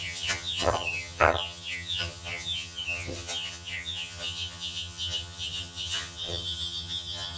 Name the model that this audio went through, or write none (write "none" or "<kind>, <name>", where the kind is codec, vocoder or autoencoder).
vocoder, HiFi-GAN